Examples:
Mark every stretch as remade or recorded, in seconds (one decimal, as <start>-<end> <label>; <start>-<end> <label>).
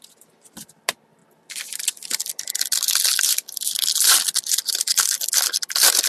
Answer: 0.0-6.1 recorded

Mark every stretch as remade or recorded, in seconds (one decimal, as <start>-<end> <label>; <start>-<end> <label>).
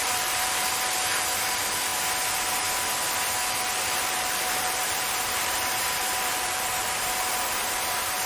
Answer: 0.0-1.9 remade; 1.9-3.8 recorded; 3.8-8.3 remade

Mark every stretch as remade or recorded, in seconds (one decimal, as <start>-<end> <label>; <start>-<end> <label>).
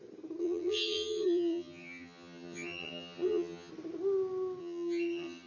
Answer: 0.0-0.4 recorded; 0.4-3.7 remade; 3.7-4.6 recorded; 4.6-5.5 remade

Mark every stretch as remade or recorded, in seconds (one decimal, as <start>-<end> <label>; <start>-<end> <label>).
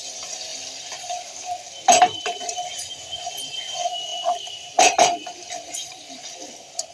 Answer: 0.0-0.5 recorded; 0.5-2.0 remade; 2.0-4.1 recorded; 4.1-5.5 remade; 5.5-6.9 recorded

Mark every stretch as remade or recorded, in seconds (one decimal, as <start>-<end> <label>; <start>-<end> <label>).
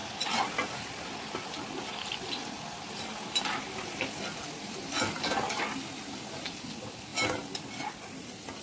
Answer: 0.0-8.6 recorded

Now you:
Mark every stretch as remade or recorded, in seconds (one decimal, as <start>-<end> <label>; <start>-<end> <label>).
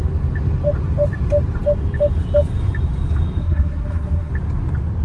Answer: 0.0-3.4 recorded; 3.4-4.3 remade; 4.3-5.0 recorded